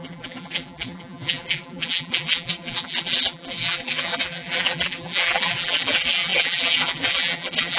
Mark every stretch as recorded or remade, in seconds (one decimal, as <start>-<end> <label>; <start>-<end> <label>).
0.0-7.8 remade